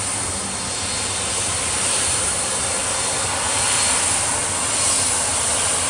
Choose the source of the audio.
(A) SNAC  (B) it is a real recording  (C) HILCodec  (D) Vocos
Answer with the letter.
B